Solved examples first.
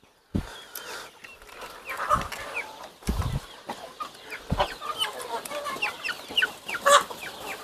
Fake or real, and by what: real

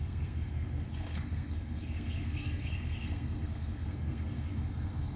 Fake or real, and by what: fake, codec, SNAC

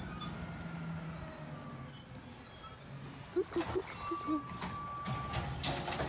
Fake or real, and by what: real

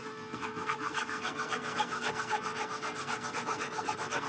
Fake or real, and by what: fake, codec, SNAC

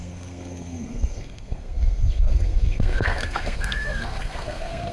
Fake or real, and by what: fake, codec, SNAC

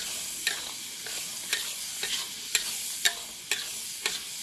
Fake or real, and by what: real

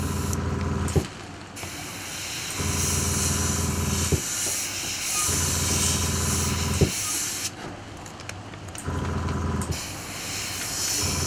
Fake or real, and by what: real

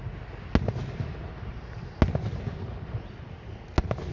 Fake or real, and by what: real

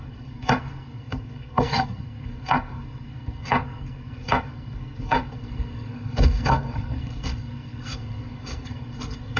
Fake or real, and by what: fake, codec, SNAC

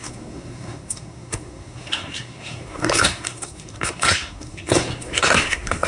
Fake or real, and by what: fake, codec, SNAC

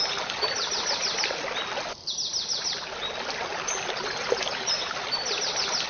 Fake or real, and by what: real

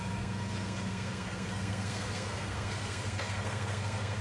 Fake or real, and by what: fake, codec, SNAC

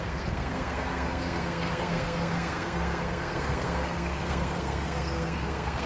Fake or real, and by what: fake, codec, SNAC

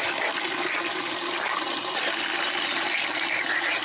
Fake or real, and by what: real